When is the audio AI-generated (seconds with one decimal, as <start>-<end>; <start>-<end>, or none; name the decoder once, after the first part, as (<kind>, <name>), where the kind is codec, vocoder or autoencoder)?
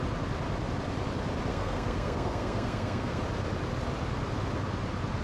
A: 1.5-3.2 (codec, SNAC)